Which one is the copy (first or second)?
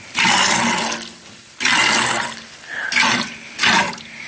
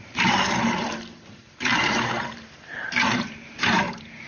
second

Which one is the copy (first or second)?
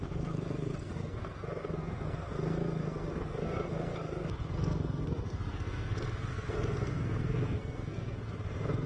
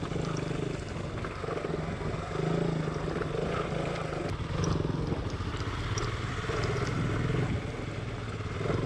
first